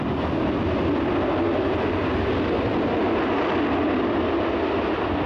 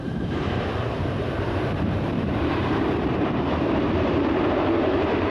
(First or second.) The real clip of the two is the first